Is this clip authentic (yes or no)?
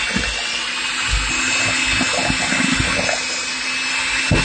yes